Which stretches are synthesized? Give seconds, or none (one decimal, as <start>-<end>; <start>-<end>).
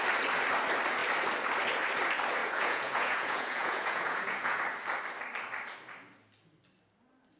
2.4-4.6